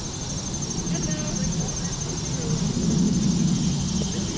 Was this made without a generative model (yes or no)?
yes